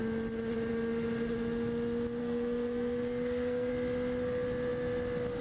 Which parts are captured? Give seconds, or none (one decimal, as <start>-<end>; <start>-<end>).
0.0-2.2; 3.7-5.4